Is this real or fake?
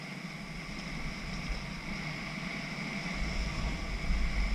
real